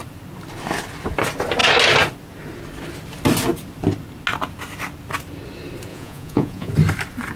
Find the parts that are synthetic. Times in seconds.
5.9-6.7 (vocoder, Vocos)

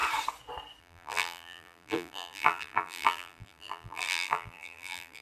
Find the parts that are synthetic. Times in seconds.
0.8-5.2 (vocoder, BigVGAN v2)

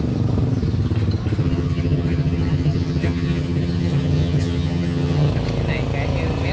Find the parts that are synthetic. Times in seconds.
1.4-5.3 (vocoder, HiFi-GAN)

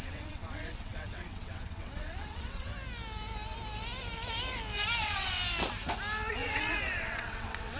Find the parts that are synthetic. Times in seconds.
0.0-2.7 (vocoder, WaveNeXt); 5.0-5.4; 6.3-7.8

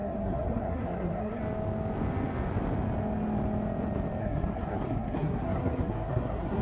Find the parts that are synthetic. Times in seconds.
0.0-1.4 (codec, SNAC); 4.2-6.6